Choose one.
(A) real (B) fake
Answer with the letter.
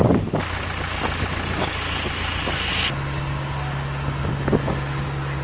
A